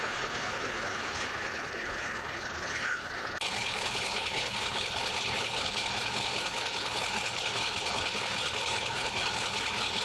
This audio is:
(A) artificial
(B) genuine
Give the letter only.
A